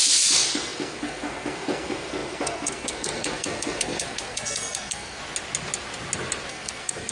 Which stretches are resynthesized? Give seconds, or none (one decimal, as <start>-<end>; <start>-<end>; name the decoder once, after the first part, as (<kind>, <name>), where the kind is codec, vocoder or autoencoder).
0.0-5.2 (codec, SNAC); 6.5-7.1